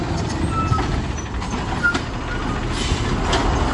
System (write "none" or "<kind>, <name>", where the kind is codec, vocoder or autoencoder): none